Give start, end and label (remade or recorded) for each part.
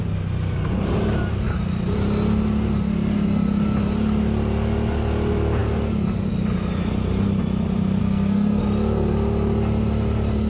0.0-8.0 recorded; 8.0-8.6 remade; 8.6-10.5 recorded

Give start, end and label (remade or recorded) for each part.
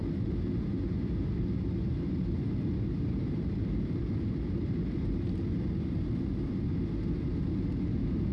0.0-8.3 recorded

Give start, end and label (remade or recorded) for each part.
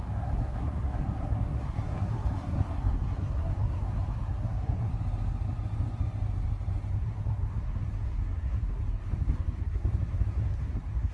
0.0-4.9 remade; 4.9-6.9 recorded; 6.9-11.1 remade